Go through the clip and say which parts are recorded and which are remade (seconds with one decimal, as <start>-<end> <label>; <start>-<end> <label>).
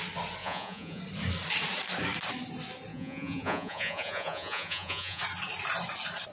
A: 0.0-0.4 recorded; 0.4-1.0 remade; 1.0-2.9 recorded; 2.9-5.2 remade; 5.2-6.3 recorded